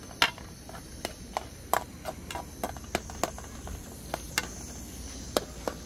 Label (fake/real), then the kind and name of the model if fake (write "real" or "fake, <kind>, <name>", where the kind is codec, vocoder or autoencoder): real